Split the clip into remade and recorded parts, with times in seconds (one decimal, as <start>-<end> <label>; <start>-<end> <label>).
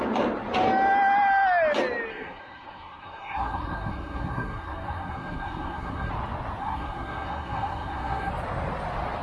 0.0-2.1 recorded; 2.1-6.1 remade; 6.1-6.6 recorded; 6.6-8.3 remade; 8.3-9.2 recorded